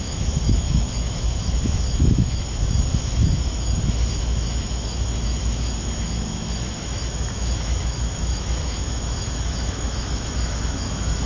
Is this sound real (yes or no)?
no